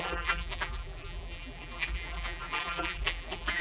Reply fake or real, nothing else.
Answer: fake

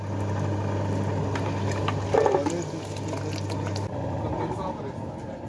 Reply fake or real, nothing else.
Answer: real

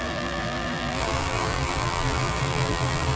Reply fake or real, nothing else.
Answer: fake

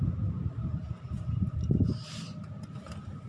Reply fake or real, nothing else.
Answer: fake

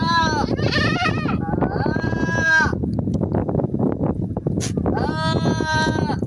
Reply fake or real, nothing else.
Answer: real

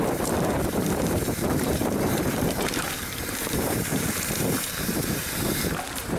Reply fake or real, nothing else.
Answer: fake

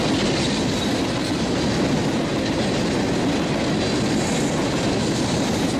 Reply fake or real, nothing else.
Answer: real